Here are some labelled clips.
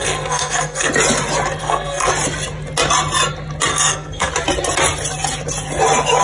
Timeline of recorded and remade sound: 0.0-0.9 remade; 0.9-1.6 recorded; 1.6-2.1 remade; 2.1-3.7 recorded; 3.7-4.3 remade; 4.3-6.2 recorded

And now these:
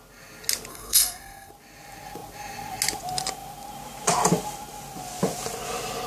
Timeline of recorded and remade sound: 0.0-0.7 recorded; 0.7-1.5 remade; 1.5-6.1 recorded

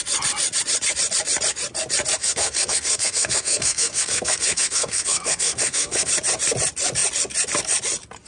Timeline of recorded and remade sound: 0.0-2.2 recorded; 2.2-6.1 remade; 6.1-8.3 recorded

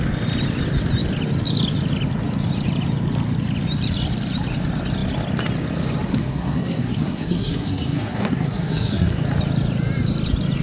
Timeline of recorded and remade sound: 0.0-6.1 recorded; 6.1-9.2 remade; 9.2-10.6 recorded

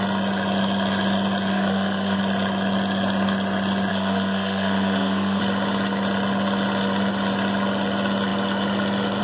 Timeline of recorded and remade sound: 0.0-1.5 recorded; 1.5-2.2 remade; 2.2-3.9 recorded; 3.9-5.4 remade; 5.4-9.2 recorded